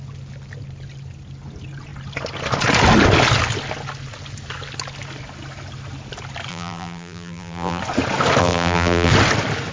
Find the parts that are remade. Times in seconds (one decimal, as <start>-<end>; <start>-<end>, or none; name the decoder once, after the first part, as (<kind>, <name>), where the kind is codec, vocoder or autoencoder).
6.5-7.8 (vocoder, BigVGAN v2); 8.4-9.1